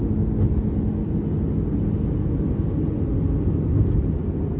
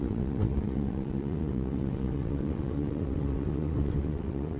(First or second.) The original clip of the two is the first